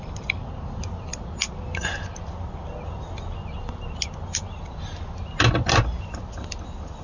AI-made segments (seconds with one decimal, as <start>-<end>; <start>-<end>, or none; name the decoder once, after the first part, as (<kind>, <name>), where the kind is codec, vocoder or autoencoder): none